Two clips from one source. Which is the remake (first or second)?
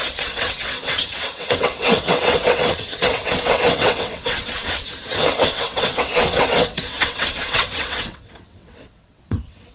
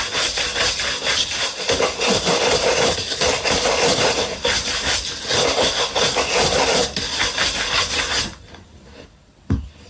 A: first